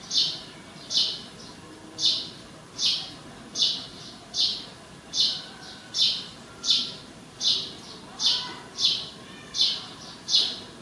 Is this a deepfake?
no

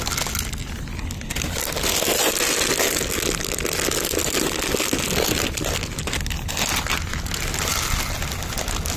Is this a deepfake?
no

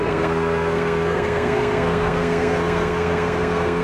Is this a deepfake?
yes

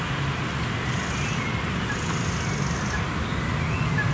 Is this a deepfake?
no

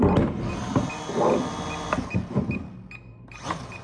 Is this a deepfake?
no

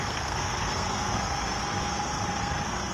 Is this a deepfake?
yes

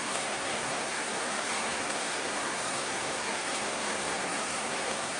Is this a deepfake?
yes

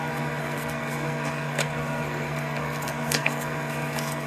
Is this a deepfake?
yes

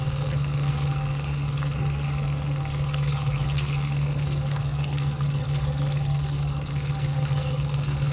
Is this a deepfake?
yes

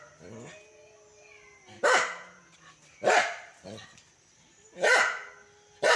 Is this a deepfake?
no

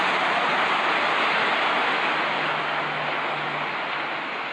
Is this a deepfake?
no